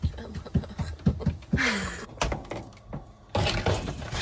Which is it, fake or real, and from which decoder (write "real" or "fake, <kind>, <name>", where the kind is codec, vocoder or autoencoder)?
real